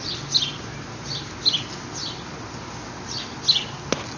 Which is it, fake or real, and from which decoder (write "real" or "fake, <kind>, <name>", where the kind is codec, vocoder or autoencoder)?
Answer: real